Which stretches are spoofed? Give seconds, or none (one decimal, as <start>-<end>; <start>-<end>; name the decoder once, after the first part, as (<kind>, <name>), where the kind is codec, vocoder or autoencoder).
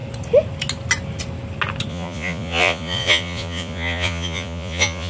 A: 1.9-5.1 (vocoder, Vocos)